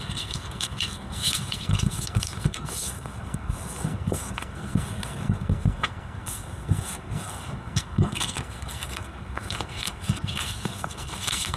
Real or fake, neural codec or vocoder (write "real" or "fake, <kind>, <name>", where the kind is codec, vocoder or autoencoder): fake, codec, SNAC